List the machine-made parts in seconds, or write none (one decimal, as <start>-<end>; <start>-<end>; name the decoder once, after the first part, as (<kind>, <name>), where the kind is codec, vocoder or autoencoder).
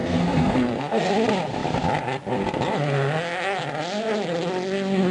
0.0-1.1 (codec, SNAC)